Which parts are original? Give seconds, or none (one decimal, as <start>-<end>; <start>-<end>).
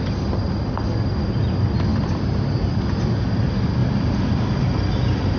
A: 0.0-1.9; 3.0-3.8; 4.6-5.4